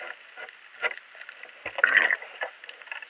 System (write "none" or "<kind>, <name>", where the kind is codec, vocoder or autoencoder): none